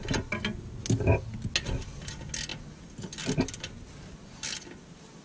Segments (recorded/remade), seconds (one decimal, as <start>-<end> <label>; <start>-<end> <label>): 0.0-5.2 recorded